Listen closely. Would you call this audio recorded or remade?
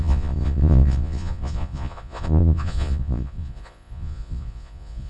remade